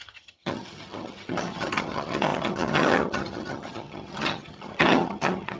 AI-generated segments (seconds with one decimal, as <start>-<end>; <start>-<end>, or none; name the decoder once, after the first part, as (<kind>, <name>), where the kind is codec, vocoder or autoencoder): 0.0-5.6 (vocoder, HiFi-GAN)